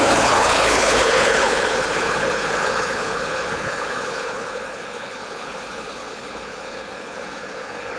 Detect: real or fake fake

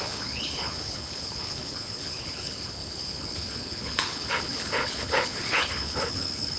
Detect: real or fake fake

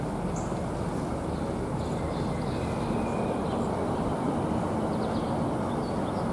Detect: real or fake real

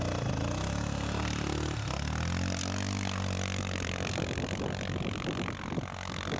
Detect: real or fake real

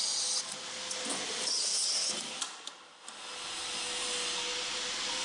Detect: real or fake real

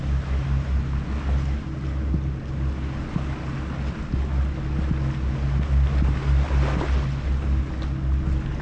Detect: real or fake real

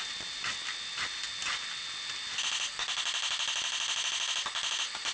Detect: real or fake real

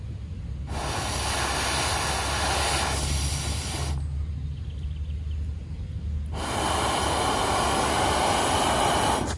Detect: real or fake real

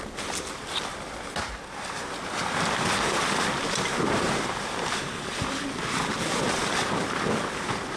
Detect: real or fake real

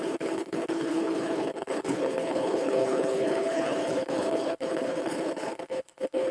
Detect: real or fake fake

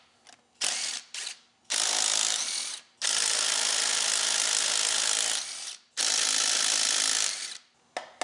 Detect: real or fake real